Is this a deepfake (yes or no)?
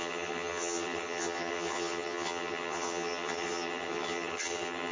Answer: yes